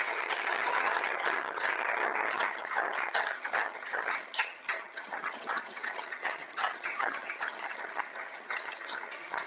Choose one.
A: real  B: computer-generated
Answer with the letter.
B